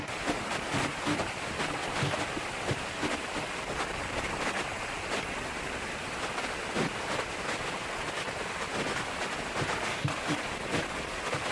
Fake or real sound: fake